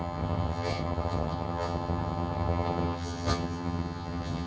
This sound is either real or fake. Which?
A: fake